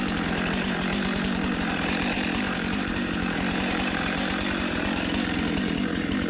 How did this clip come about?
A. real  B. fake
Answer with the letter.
B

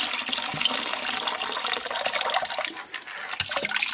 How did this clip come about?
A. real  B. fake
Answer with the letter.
A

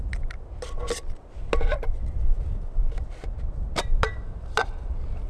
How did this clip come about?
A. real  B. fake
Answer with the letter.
A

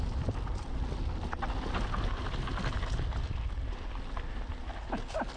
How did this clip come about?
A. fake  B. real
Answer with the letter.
B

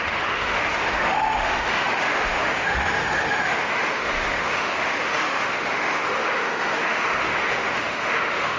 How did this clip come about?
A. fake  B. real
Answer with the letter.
A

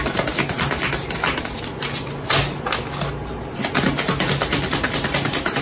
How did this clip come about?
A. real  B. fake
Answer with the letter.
A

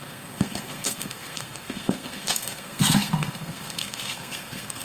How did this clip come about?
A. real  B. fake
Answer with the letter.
B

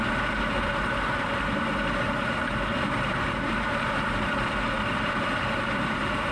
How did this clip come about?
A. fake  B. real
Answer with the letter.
A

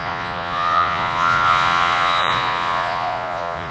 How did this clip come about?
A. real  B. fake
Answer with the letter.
B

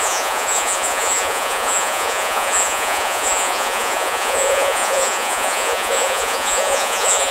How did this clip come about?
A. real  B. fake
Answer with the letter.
B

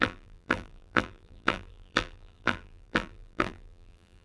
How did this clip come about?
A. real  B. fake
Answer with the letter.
B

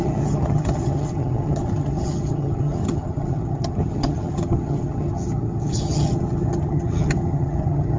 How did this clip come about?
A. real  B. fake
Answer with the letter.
B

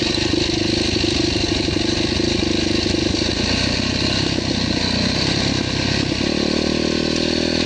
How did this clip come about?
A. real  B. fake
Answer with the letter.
A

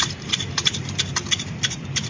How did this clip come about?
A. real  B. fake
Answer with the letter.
B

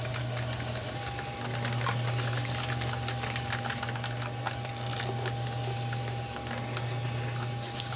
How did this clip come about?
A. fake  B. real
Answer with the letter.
B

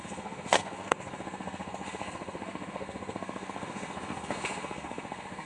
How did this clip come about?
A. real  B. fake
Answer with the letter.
B